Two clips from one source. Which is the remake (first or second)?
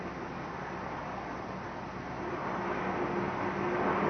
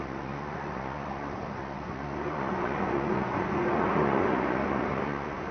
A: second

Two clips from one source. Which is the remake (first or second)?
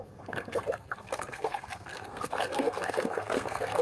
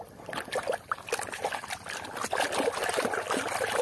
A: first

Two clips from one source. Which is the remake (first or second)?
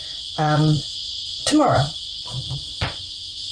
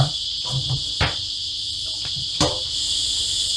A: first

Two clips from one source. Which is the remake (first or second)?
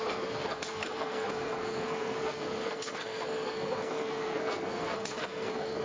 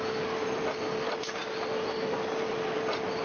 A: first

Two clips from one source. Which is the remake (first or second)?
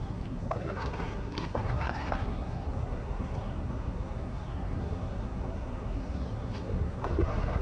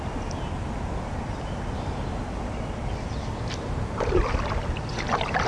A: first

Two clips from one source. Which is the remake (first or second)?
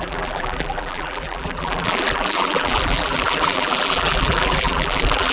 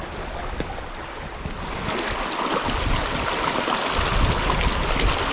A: first